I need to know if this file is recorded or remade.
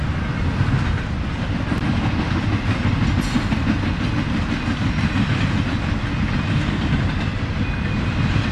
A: recorded